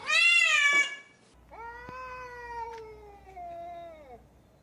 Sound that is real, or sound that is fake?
real